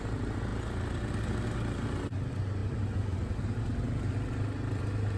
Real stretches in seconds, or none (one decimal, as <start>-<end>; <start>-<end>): 0.0-5.2